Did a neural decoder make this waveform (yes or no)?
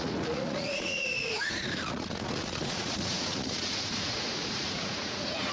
yes